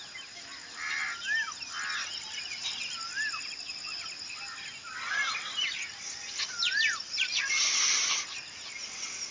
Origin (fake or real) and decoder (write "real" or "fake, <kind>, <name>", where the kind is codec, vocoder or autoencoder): real